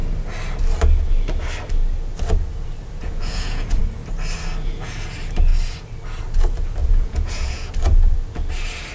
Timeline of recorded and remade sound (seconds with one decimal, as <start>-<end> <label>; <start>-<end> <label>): 0.0-3.0 recorded; 3.0-3.8 remade; 3.8-6.8 recorded; 6.8-7.7 remade; 7.7-8.9 recorded

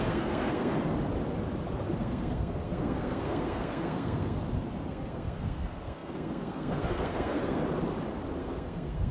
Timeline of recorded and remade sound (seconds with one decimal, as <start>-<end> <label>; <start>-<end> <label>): 0.0-0.7 remade; 0.7-2.0 recorded; 2.0-4.4 remade; 4.4-4.9 recorded; 4.9-7.6 remade; 7.6-8.4 recorded; 8.4-9.1 remade

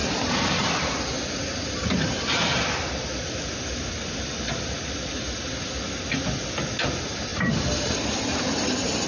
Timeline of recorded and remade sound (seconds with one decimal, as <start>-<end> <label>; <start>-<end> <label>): 0.0-5.0 remade; 5.0-7.3 recorded; 7.3-8.2 remade; 8.2-9.1 recorded

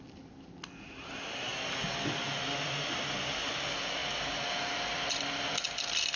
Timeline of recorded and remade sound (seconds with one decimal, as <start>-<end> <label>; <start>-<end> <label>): 0.0-6.2 recorded

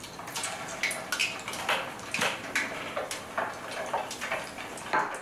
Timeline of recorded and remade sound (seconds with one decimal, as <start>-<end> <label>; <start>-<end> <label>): 0.0-5.2 recorded

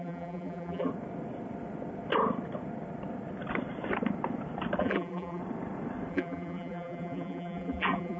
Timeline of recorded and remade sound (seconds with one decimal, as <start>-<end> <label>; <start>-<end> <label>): 0.0-0.9 remade; 0.9-4.8 recorded; 4.8-5.4 remade; 5.4-6.1 recorded; 6.1-8.2 remade